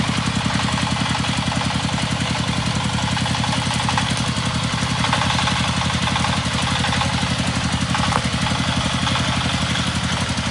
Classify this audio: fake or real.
real